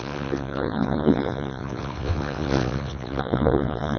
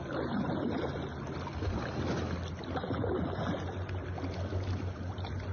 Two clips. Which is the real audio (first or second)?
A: second